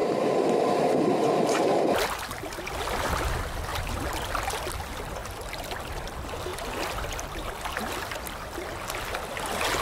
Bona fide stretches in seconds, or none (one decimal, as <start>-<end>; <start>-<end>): 0.0-3.7; 4.3-5.2; 5.9-9.8